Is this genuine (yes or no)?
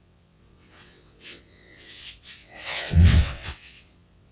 no